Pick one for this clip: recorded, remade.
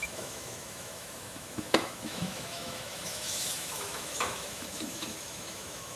remade